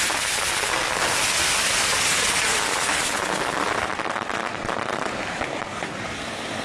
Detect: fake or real real